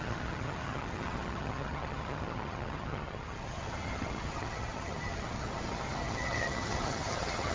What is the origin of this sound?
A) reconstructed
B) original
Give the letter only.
A